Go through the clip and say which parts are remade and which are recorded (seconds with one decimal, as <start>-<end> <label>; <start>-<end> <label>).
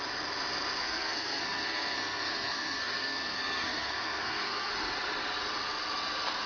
0.0-0.8 recorded; 0.8-4.7 remade; 4.7-6.5 recorded